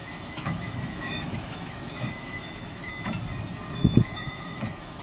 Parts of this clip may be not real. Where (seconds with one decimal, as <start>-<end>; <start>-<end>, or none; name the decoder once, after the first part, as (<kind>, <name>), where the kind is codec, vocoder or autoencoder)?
0.0-3.0 (autoencoder, DAC-VAE); 3.8-5.0